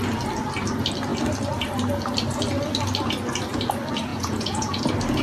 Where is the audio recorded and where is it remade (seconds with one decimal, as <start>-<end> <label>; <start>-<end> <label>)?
0.0-4.1 recorded; 4.1-4.8 remade; 4.8-5.2 recorded